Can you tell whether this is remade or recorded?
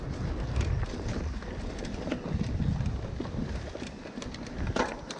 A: recorded